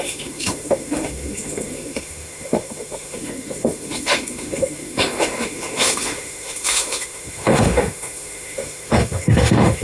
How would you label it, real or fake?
fake